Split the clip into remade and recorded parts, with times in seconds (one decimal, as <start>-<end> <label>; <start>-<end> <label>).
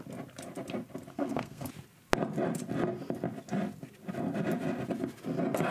0.0-1.1 recorded; 1.1-1.7 remade; 1.7-5.7 recorded